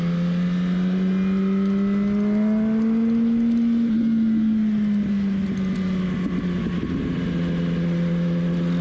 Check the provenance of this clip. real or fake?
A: real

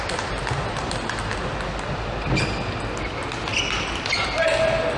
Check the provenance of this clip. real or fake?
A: real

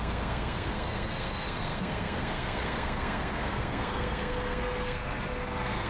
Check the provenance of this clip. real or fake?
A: fake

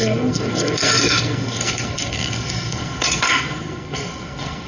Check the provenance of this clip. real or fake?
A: fake